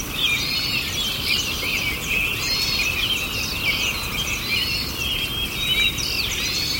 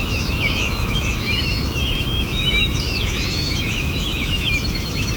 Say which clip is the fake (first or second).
second